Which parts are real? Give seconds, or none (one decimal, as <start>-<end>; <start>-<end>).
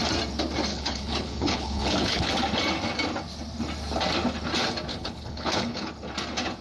0.0-0.7; 2.3-4.9; 5.9-6.6